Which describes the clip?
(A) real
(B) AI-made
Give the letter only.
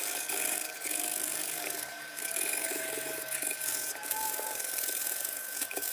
B